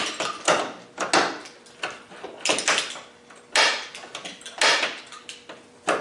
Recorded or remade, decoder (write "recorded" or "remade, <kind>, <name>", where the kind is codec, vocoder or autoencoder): recorded